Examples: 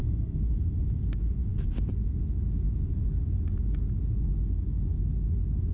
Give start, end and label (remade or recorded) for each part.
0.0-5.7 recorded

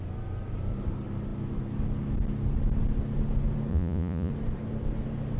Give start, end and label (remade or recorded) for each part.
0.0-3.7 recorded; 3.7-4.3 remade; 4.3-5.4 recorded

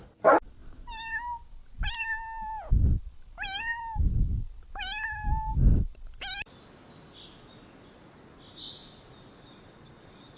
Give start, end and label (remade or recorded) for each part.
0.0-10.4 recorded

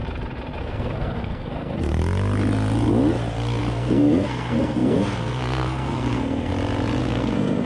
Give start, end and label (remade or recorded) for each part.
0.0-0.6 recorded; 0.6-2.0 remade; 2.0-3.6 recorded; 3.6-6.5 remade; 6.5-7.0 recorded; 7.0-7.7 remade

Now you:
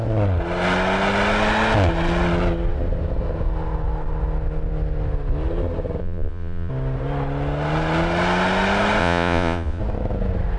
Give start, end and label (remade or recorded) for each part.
0.0-6.0 recorded; 6.0-6.7 remade; 6.7-9.0 recorded; 9.0-9.8 remade; 9.8-10.6 recorded

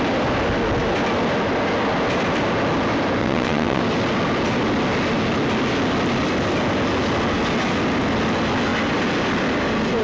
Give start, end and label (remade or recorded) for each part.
0.0-3.2 recorded; 3.2-3.8 remade; 3.8-10.0 recorded